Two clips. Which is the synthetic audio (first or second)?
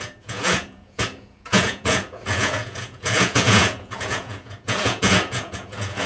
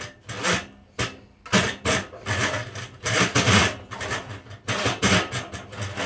first